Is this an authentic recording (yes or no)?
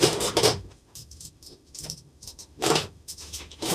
no